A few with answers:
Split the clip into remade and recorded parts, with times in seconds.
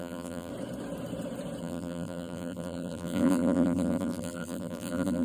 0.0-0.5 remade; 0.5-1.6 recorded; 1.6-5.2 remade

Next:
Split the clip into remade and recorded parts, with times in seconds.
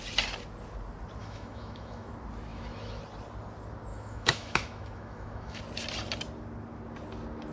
0.0-1.2 recorded; 1.2-2.1 remade; 2.1-2.5 recorded; 2.5-3.0 remade; 3.0-3.9 recorded; 3.9-5.6 remade; 5.6-7.5 recorded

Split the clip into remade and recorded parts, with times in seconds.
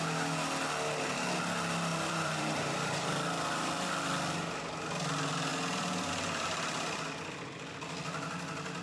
0.0-1.9 recorded; 1.9-3.1 remade; 3.1-5.5 recorded; 5.5-6.1 remade; 6.1-8.8 recorded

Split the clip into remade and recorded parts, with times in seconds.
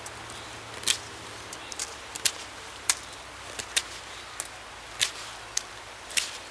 0.0-3.8 remade; 3.8-5.2 recorded; 5.2-6.5 remade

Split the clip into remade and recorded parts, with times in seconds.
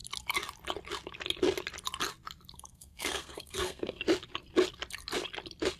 0.0-2.5 recorded; 2.5-4.0 remade; 4.0-5.8 recorded